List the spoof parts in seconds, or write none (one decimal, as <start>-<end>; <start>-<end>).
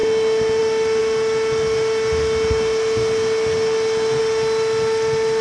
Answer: none